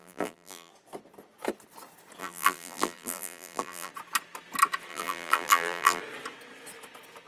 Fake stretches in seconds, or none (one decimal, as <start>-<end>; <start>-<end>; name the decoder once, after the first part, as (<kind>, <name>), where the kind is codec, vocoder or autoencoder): 0.0-0.7 (vocoder, BigVGAN v2); 2.2-3.9; 4.9-6.0